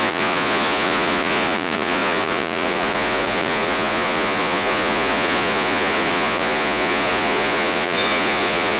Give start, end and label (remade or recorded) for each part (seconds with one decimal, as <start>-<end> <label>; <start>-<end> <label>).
0.0-8.8 remade